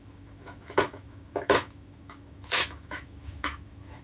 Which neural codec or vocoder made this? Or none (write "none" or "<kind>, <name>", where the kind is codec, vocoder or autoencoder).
autoencoder, DAC-VAE